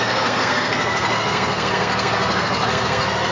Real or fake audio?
fake